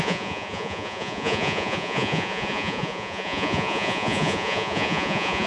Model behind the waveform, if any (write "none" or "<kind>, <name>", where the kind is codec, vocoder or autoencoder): vocoder, Vocos